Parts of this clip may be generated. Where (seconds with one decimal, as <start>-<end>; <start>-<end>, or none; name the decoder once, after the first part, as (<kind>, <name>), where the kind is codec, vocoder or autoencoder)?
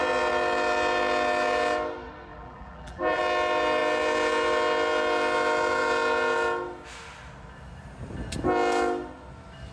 2.3-3.2 (vocoder, BigVGAN v2)